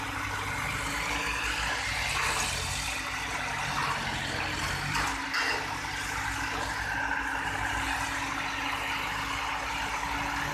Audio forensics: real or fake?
real